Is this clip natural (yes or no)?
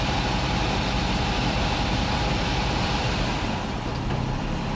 no